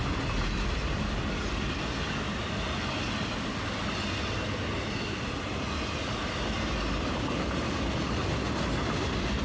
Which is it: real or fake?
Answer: real